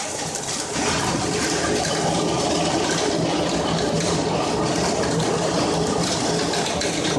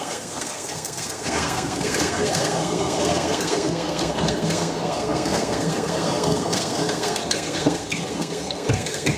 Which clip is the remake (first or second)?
second